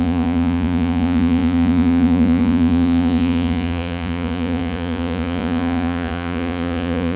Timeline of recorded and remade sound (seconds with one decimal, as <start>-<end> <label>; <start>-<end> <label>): 0.0-7.2 remade